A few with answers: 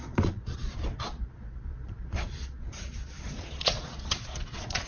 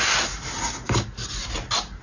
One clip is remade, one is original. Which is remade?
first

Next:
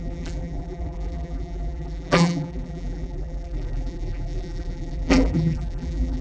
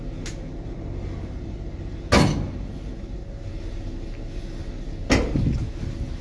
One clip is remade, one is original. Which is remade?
first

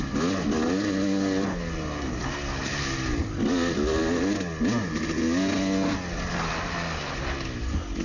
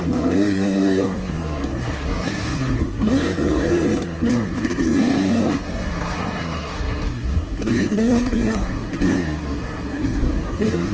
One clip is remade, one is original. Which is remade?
second